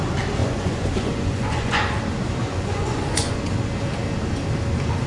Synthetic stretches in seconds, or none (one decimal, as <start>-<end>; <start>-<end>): 0.4-1.9; 2.4-3.4